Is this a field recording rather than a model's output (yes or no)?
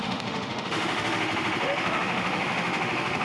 no